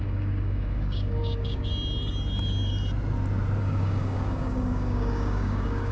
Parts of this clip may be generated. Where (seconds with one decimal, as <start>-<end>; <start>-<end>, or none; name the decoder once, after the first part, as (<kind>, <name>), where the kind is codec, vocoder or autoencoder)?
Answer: 0.0-1.7 (codec, DAC); 3.6-5.9